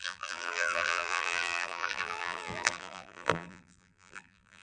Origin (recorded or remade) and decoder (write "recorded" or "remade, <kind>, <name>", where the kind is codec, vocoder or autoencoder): remade, vocoder, BigVGAN v2